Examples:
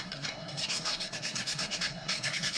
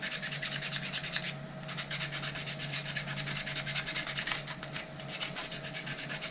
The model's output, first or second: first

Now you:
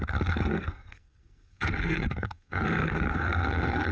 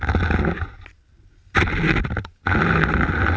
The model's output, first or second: first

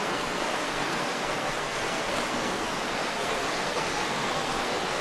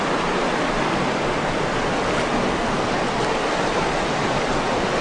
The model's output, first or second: first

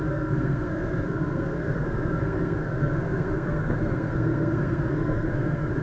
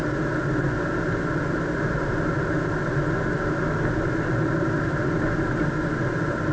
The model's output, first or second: first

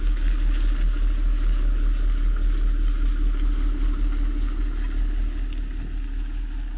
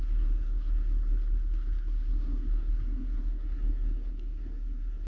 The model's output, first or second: second